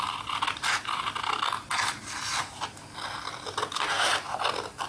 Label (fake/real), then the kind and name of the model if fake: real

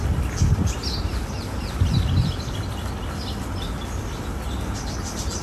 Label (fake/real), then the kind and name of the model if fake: real